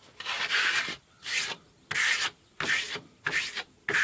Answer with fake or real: real